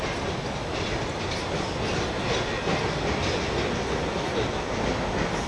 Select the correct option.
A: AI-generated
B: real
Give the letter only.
B